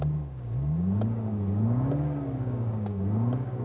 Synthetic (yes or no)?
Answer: yes